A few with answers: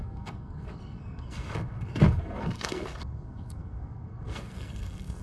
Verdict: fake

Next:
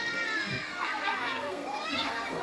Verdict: fake